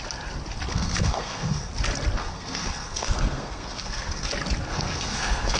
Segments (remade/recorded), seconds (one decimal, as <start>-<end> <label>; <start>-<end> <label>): 0.0-0.7 recorded; 0.7-1.7 remade; 1.7-2.2 recorded; 2.2-4.3 remade; 4.3-4.7 recorded; 4.7-5.6 remade